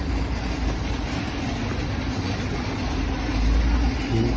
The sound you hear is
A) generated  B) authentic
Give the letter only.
B